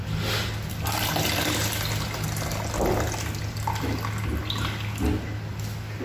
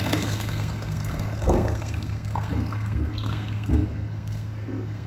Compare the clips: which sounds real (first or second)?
first